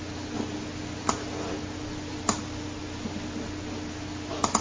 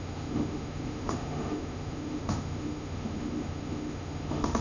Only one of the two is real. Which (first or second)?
first